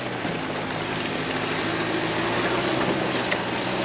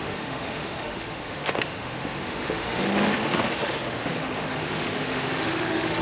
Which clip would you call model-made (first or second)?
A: second